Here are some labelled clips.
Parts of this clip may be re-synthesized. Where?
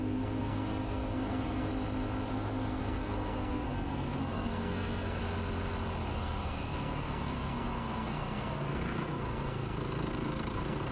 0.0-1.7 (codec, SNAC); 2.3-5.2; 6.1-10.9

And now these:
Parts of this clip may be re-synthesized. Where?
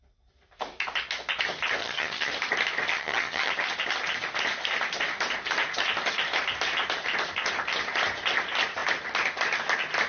1.8-2.3 (vocoder, HiFi-GAN); 2.9-3.5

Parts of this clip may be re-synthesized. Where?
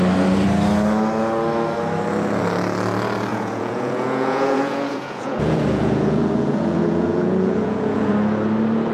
3.3-8.1 (vocoder, Vocos)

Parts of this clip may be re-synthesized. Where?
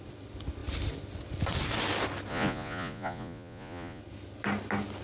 2.3-4.0 (vocoder, Vocos)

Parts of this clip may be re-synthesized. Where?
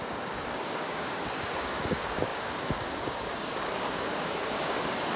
0.0-5.2 (codec, DAC)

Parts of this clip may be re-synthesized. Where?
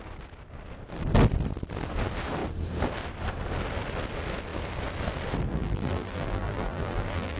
5.5-7.4 (vocoder, BigVGAN v2)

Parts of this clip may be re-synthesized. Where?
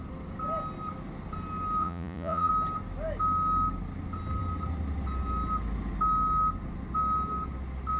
1.8-2.5 (vocoder, Vocos)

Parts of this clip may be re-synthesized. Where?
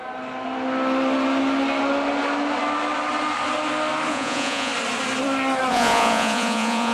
4.1-4.7 (vocoder, Vocos); 5.7-6.9